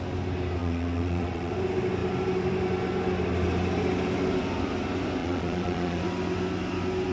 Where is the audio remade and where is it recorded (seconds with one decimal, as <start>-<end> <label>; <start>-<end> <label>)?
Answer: 0.0-0.6 recorded; 0.6-1.5 remade; 1.5-5.2 recorded; 5.2-6.0 remade; 6.0-7.1 recorded